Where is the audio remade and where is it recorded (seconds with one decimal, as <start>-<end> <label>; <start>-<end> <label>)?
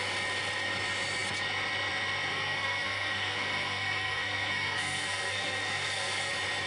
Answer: 0.0-2.3 recorded; 2.3-6.3 remade; 6.3-6.7 recorded